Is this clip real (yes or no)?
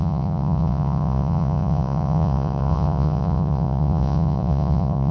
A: no